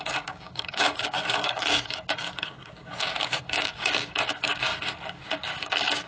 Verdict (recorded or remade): remade